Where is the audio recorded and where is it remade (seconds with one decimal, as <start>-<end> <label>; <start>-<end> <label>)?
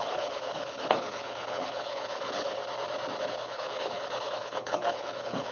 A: 0.0-2.6 remade; 2.6-3.2 recorded; 3.2-5.5 remade